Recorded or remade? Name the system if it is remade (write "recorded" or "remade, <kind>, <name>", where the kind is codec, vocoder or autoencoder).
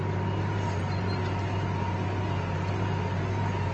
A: recorded